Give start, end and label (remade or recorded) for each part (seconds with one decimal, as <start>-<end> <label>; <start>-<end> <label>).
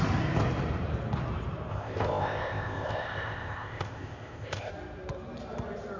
0.0-1.7 recorded; 1.7-4.7 remade; 4.7-6.0 recorded